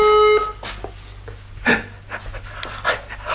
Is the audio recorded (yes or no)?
yes